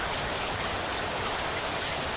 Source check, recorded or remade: recorded